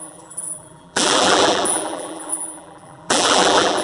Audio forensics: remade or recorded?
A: remade